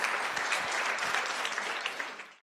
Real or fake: fake